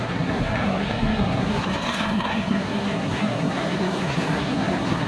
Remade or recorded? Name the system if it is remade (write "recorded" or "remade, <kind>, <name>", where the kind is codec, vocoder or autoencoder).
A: remade, codec, SNAC